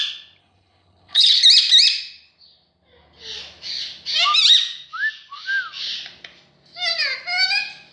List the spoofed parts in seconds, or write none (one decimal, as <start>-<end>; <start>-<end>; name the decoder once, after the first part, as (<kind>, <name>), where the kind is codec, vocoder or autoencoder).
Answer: 0.4-1.4 (codec, HILCodec)